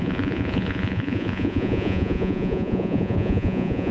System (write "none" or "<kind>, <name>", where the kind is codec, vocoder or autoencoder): vocoder, Vocos